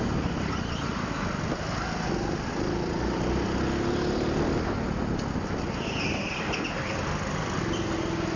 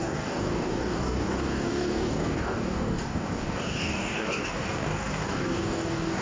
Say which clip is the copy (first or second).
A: second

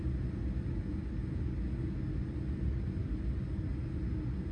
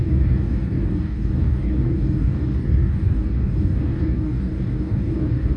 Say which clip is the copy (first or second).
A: second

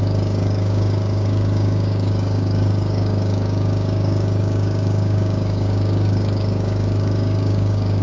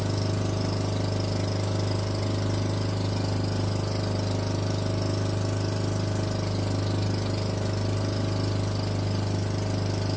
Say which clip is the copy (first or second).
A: first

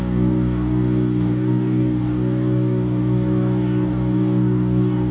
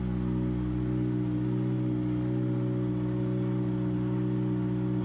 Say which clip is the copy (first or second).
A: first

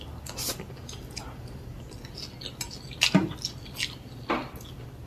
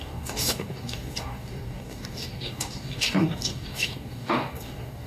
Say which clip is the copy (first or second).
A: second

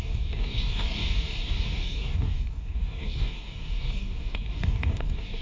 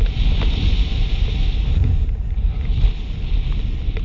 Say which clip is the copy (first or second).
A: first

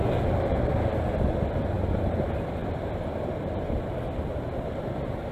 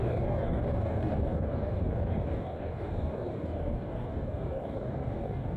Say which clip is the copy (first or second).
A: second